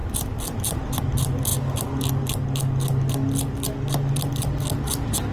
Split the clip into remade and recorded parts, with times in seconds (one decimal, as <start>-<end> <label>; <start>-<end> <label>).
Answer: 0.0-5.3 recorded